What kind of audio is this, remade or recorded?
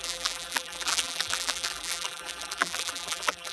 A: remade